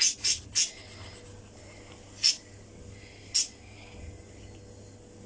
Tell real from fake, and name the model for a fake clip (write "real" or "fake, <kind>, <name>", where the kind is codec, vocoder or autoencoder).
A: real